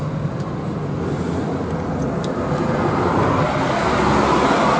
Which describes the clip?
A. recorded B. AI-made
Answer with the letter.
A